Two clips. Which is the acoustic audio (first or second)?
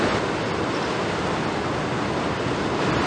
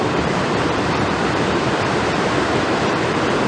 first